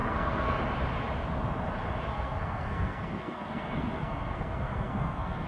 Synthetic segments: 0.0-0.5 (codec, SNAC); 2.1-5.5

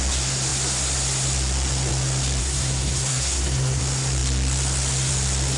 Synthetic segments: 2.4-3.8 (codec, SNAC)

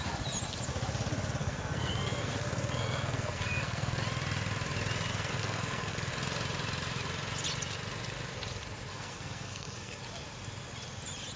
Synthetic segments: 1.4-4.0 (codec, SNAC); 5.1-6.1; 8.9-10.0

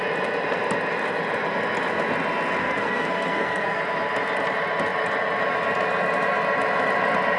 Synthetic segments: 2.6-3.8 (codec, SNAC)

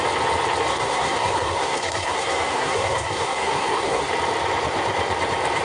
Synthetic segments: 0.7-4.1 (codec, SNAC)